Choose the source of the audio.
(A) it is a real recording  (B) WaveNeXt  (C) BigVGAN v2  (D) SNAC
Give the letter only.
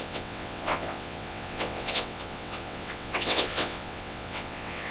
B